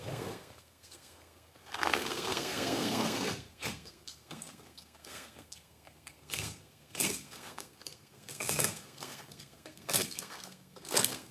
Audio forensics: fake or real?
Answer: fake